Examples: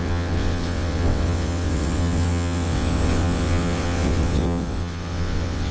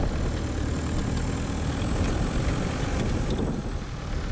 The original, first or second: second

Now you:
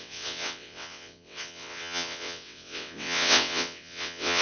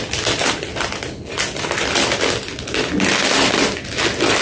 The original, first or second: second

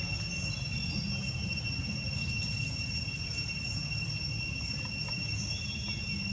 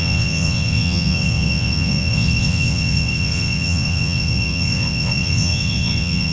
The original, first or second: first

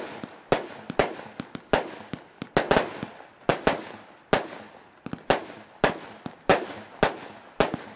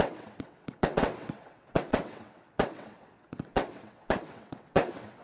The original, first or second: first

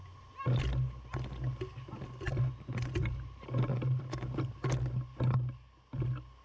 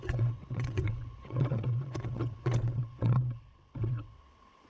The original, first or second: first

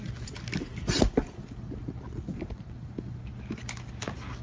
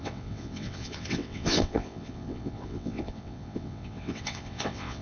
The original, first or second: first